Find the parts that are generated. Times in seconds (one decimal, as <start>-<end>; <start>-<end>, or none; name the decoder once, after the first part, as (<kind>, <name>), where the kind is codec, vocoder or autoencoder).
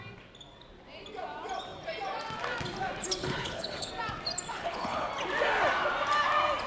3.2-3.9 (codec, HILCodec); 4.5-5.1